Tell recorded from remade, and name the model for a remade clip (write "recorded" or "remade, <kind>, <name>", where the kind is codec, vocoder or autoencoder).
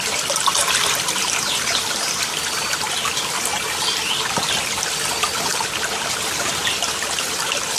recorded